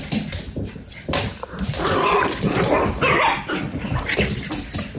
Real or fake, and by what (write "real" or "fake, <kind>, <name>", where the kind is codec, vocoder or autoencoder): fake, vocoder, BigVGAN v2